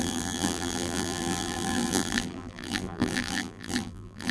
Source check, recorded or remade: remade